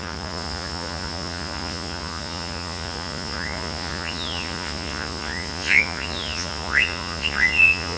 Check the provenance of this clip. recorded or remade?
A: remade